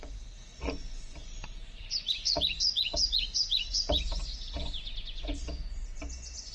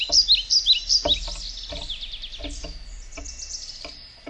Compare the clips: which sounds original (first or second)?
second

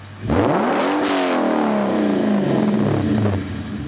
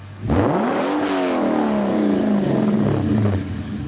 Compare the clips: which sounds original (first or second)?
first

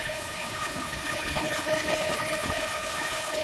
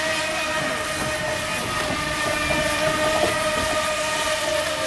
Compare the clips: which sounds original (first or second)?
second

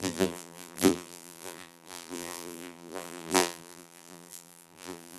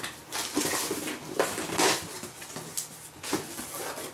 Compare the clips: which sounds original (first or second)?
second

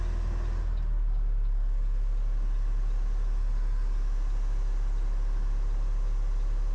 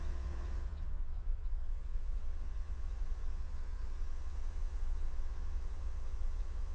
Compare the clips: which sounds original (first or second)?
first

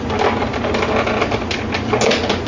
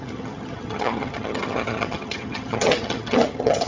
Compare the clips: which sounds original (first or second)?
first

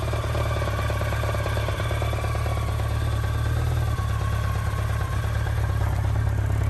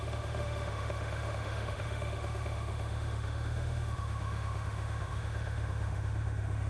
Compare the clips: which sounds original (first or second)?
first